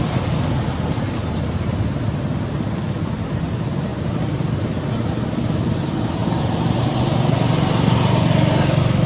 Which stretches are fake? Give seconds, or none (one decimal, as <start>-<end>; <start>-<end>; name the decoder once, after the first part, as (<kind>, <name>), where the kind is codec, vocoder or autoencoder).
none